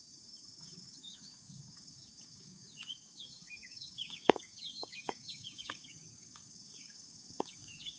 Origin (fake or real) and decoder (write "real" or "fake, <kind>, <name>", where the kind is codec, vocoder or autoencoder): fake, codec, DAC